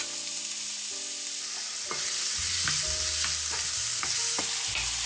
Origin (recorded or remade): recorded